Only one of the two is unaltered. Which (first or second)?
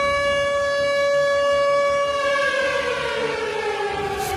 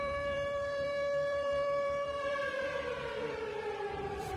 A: first